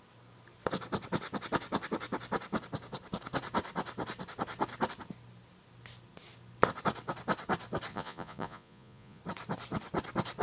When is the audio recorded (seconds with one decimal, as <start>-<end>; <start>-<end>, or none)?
0.0-7.9; 9.2-10.4